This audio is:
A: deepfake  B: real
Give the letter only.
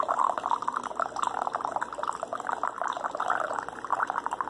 B